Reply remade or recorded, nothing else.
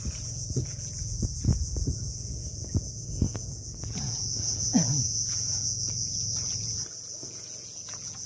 remade